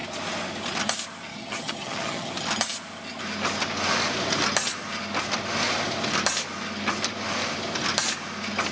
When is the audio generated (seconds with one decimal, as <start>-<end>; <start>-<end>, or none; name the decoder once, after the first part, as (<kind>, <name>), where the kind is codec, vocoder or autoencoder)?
1.3-2.3 (vocoder, HiFi-GAN)